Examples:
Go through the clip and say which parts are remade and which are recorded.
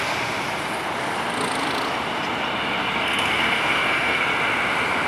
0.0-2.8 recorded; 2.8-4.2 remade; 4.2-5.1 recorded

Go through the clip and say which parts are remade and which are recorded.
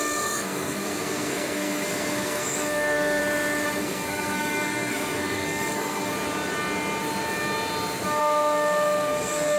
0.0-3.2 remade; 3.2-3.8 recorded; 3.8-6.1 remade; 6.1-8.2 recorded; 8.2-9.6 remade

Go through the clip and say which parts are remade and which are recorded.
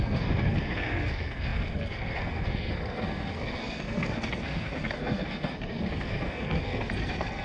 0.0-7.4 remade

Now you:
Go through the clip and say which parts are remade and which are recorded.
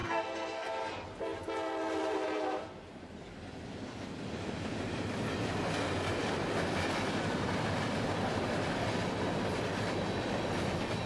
0.0-0.7 remade; 0.7-11.1 recorded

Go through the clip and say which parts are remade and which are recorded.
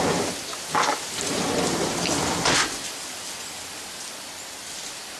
0.0-5.2 recorded